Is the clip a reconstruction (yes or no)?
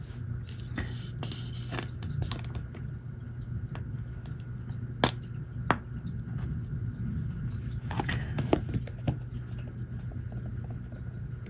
no